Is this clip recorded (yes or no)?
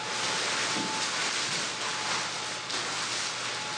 yes